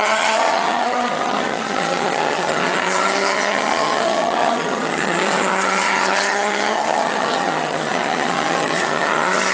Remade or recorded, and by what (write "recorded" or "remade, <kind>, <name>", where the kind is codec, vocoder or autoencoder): remade, vocoder, HiFi-GAN